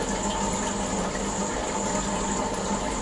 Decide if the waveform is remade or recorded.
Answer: recorded